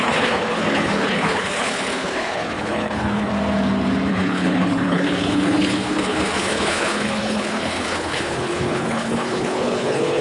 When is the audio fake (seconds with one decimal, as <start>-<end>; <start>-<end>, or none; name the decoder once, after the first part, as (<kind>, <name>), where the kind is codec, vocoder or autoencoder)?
0.0-3.3 (codec, HILCodec); 4.1-10.2